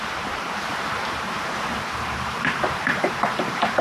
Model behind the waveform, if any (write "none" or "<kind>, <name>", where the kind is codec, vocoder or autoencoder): vocoder, BigVGAN v2